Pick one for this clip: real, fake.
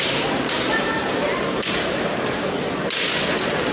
fake